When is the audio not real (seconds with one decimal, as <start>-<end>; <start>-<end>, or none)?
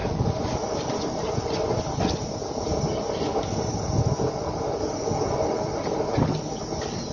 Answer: 0.0-1.8